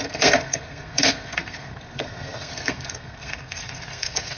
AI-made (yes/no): yes